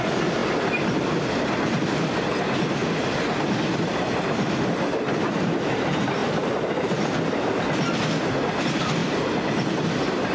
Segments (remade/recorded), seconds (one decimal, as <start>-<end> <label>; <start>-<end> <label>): 0.0-0.4 remade; 0.4-1.5 recorded; 1.5-2.8 remade; 2.8-5.3 recorded; 5.3-6.2 remade; 6.2-8.6 recorded; 8.6-9.0 remade; 9.0-9.8 recorded; 9.8-10.3 remade